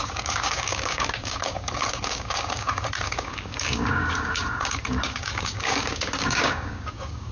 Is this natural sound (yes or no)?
no